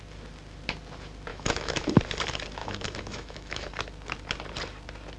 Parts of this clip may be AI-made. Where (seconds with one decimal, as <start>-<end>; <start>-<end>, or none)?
1.3-1.9; 2.6-3.7